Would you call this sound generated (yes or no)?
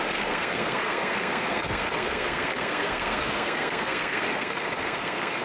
yes